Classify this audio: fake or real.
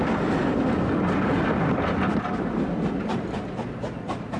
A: real